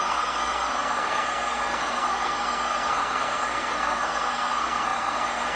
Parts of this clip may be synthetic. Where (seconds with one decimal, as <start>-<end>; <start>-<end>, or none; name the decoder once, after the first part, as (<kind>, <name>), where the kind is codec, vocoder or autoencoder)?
0.0-5.6 (codec, SNAC)